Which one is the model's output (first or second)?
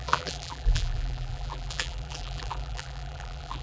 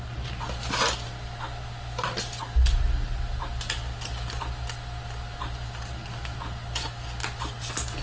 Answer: first